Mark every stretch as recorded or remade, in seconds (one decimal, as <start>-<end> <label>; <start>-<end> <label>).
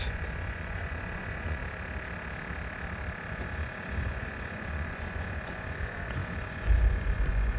0.0-1.6 remade; 1.6-3.3 recorded; 3.3-7.6 remade